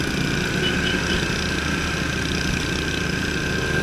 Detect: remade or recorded recorded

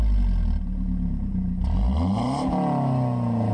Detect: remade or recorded recorded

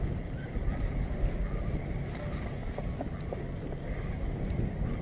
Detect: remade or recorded recorded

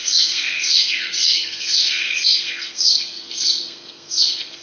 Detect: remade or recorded remade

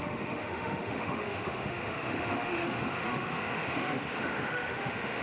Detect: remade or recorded remade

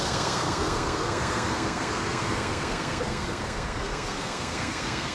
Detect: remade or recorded remade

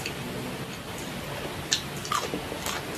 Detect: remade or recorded recorded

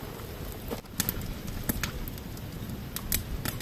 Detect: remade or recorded recorded